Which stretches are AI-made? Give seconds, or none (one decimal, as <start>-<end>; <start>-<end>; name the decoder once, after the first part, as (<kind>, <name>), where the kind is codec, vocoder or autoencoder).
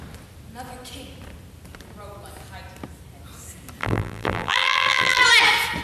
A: 3.8-5.2 (vocoder, BigVGAN v2)